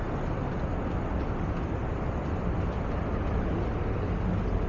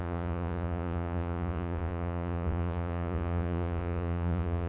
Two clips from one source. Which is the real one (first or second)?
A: first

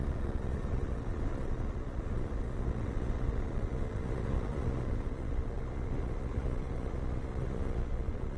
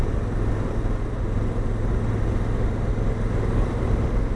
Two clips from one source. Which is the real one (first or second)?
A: second